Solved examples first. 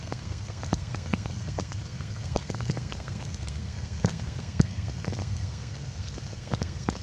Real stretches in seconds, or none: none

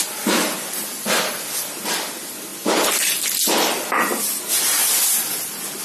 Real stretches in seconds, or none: 0.0-5.8

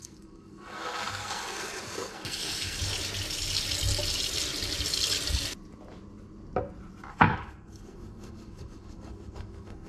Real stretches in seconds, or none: 2.8-7.1

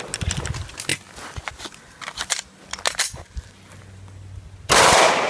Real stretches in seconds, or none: 0.0-5.3

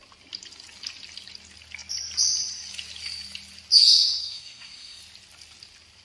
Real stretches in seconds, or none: 0.0-4.2; 5.0-6.0